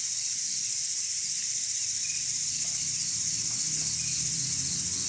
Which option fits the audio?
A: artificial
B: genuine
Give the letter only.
B